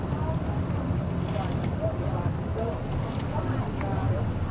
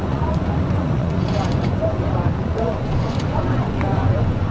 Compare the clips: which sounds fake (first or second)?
second